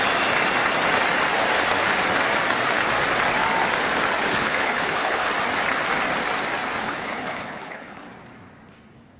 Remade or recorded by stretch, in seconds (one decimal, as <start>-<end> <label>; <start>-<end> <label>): 0.0-4.3 recorded; 4.3-5.3 remade; 5.3-6.8 recorded; 6.8-8.0 remade; 8.0-9.2 recorded